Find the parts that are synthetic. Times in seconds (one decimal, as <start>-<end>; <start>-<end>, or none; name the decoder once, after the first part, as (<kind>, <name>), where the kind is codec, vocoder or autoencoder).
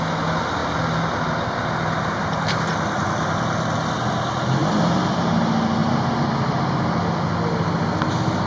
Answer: 4.6-5.3 (vocoder, BigVGAN v2); 5.8-6.7